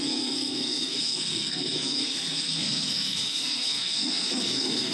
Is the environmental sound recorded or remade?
remade